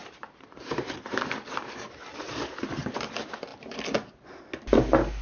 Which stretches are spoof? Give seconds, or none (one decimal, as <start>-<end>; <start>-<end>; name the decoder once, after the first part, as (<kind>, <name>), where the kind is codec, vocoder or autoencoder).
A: 0.0-3.1 (vocoder, BigVGAN v2)